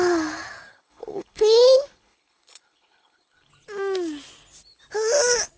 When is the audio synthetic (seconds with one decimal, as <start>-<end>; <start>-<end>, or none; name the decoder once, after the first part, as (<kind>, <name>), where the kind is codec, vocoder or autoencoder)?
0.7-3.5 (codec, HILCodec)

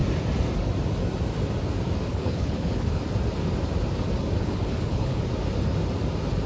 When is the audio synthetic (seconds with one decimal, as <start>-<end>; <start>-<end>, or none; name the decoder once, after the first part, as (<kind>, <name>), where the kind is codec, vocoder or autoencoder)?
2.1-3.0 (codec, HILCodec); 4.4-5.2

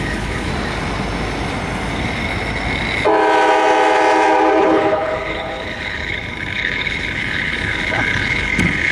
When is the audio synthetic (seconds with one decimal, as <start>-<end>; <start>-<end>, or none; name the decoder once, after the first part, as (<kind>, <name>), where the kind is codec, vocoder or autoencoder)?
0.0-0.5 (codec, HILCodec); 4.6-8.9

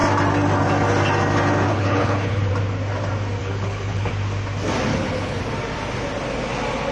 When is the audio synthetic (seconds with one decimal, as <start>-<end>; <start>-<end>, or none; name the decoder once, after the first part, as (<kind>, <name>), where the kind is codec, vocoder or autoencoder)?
1.7-2.5 (codec, HILCodec); 3.4-4.1; 4.9-5.4

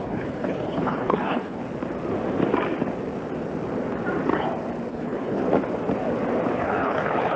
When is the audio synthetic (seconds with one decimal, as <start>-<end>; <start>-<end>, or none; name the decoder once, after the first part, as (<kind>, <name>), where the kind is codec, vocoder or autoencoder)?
0.0-1.6 (codec, HILCodec); 4.9-5.4; 6.6-7.4

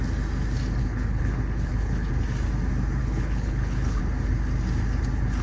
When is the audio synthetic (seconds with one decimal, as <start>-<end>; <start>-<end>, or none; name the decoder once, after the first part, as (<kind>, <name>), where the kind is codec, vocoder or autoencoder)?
0.8-2.1 (codec, HILCodec); 3.0-4.0

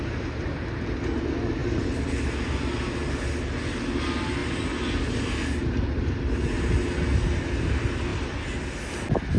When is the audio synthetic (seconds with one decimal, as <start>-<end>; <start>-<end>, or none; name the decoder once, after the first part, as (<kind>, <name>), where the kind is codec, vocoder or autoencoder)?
none